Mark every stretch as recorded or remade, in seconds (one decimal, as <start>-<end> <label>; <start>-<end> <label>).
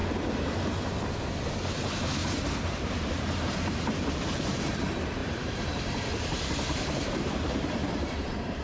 0.0-0.9 remade; 0.9-2.2 recorded; 2.2-4.8 remade; 4.8-5.2 recorded; 5.2-8.1 remade; 8.1-8.6 recorded